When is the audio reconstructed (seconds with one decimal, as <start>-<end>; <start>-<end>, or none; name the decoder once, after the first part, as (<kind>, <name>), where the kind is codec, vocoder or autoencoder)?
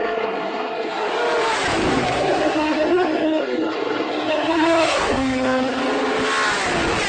0.0-1.1 (codec, SNAC); 1.9-5.8